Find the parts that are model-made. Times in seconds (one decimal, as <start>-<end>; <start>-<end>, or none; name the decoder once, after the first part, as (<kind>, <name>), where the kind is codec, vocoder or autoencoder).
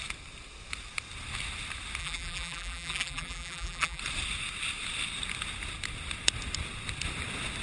2.0-4.0 (vocoder, BigVGAN v2)